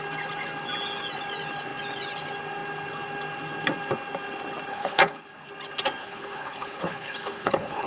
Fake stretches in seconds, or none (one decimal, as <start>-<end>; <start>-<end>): 4.7-5.5; 6.0-7.9